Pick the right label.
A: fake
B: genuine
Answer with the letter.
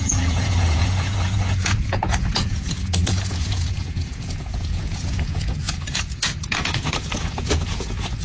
A